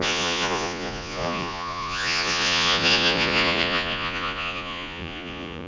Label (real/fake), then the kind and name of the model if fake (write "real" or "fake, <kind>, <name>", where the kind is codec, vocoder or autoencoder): fake, vocoder, Vocos